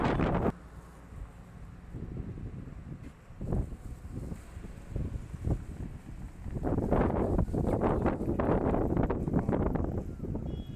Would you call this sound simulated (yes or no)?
no